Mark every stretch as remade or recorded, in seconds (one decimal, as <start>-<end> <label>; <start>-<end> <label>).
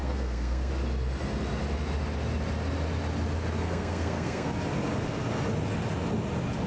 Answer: 0.0-0.7 remade; 0.7-3.6 recorded; 3.6-4.5 remade; 4.5-6.7 recorded